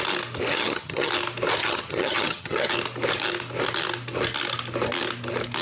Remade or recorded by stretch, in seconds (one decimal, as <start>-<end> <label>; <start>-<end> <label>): 0.0-0.5 recorded; 0.5-1.1 remade; 1.1-1.6 recorded; 1.6-2.7 remade; 2.7-5.6 recorded